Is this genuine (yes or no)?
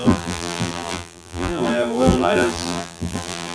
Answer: no